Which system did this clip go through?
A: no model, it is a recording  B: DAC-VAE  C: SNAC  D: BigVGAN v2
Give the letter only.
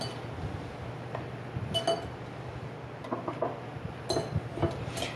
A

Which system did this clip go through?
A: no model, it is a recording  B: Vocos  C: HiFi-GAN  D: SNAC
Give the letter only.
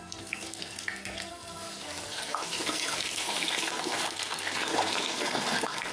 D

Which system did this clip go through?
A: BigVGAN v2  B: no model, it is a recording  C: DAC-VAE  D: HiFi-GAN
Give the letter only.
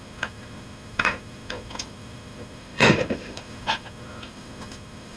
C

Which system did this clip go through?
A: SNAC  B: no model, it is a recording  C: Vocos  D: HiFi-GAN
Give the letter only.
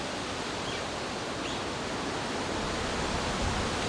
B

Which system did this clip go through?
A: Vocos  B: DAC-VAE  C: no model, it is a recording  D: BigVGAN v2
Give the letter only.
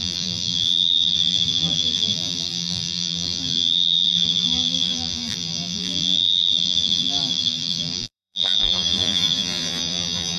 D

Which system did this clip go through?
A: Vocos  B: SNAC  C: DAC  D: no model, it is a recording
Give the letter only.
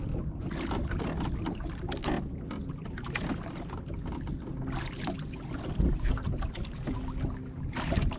D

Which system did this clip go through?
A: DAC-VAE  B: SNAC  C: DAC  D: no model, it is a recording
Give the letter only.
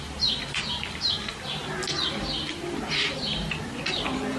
D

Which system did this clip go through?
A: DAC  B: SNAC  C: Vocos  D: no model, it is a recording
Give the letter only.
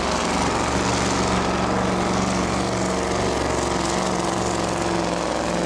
D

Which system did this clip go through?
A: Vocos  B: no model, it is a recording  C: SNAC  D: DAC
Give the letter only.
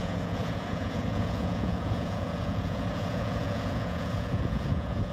A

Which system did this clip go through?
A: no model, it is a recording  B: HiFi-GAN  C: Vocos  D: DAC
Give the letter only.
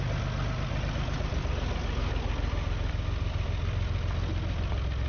A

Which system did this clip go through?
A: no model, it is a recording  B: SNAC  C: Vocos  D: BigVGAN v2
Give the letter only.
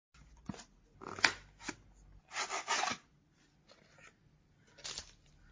A